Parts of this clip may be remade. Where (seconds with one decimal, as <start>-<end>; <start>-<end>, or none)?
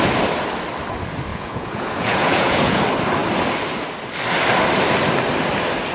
1.3-2.8